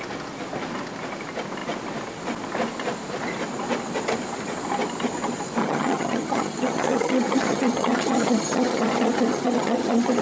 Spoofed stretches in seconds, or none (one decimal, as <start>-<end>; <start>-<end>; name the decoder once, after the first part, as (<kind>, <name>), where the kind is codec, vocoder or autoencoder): 5.6-10.2 (vocoder, HiFi-GAN)